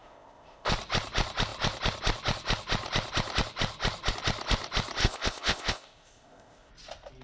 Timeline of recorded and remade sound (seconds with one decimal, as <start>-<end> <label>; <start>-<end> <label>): 0.0-0.7 remade; 0.7-5.0 recorded; 5.0-6.7 remade; 6.7-7.2 recorded